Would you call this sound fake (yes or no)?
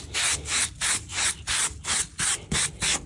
no